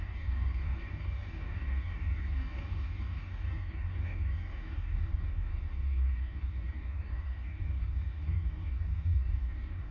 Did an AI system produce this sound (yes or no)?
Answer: yes